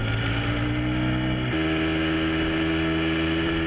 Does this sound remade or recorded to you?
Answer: recorded